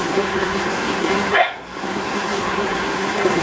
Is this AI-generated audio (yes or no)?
yes